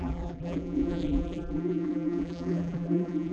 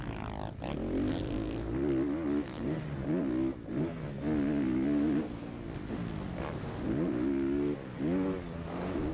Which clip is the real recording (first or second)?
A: second